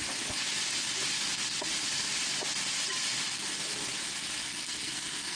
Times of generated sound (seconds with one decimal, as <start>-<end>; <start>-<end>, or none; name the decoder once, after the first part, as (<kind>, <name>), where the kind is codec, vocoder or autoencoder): 4.4-5.4 (codec, SNAC)